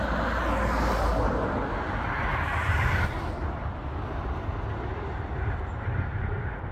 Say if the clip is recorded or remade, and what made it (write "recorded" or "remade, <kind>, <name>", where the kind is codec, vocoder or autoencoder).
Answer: recorded